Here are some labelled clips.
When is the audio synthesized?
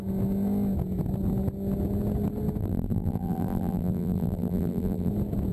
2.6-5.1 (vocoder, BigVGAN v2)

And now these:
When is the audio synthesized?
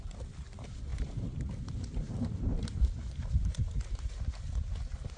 0.9-4.0 (vocoder, BigVGAN v2)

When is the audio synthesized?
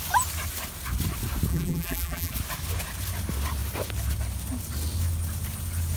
1.5-2.3 (vocoder, BigVGAN v2)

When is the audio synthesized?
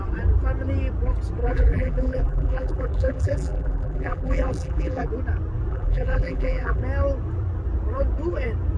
1.4-5.1 (vocoder, BigVGAN v2); 5.7-6.8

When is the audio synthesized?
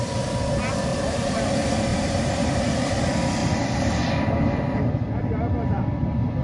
0.9-1.5 (vocoder, BigVGAN v2); 1.9-2.9; 3.4-4.2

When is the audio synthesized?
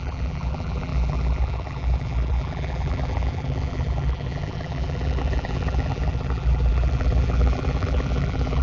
0.0-8.6 (vocoder, BigVGAN v2)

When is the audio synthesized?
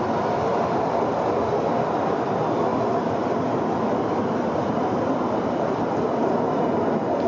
0.5-1.9 (vocoder, BigVGAN v2); 2.7-5.5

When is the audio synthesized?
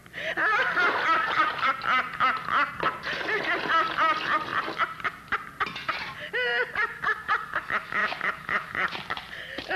6.5-7.3 (vocoder, BigVGAN v2); 8.0-9.8